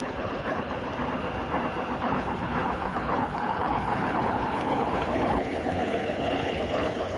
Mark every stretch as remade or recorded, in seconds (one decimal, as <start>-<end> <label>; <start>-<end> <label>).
0.0-0.9 remade; 0.9-2.0 recorded; 2.0-7.2 remade